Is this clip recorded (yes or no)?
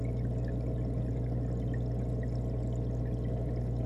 yes